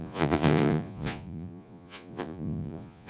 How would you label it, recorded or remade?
remade